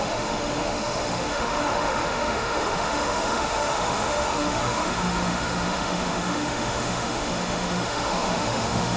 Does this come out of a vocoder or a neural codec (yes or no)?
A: yes